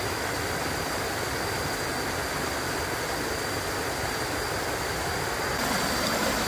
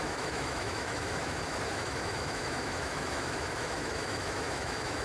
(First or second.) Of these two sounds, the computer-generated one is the second